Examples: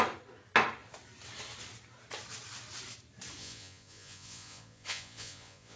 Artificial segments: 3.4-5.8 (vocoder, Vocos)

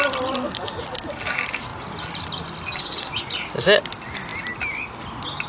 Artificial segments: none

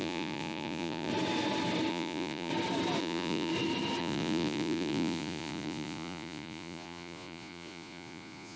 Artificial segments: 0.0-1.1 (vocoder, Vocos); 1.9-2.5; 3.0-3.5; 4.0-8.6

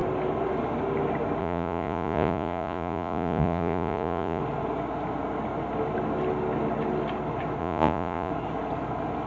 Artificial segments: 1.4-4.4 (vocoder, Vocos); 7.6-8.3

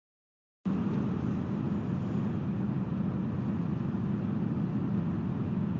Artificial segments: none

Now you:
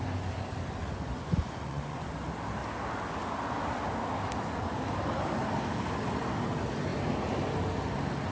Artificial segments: 0.8-2.1 (vocoder, Vocos)

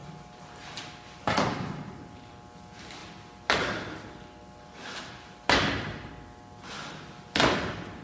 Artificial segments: 0.0-2.4 (vocoder, BigVGAN v2)